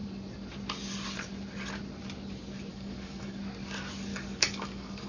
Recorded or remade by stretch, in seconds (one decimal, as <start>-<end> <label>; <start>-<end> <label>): 0.0-2.7 recorded; 2.7-3.4 remade; 3.4-4.1 recorded; 4.1-5.1 remade